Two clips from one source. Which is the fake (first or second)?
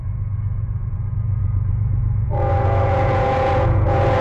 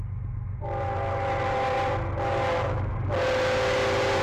first